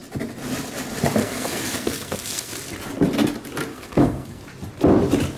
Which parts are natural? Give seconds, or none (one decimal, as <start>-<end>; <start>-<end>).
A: 0.0-1.2; 2.5-3.7; 4.4-5.4